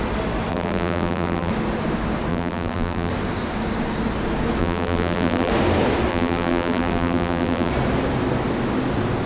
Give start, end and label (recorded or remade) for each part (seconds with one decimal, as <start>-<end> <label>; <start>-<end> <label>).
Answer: 0.0-0.5 recorded; 0.5-1.5 remade; 1.5-2.3 recorded; 2.3-3.1 remade; 3.1-4.6 recorded; 4.6-5.5 remade; 5.5-6.1 recorded; 6.1-7.7 remade; 7.7-9.3 recorded